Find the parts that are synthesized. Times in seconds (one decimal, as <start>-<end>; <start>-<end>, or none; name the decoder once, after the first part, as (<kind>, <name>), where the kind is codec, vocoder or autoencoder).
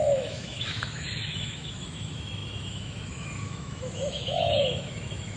0.0-5.4 (autoencoder, DAC-VAE)